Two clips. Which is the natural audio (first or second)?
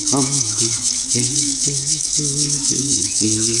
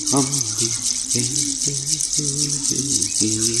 second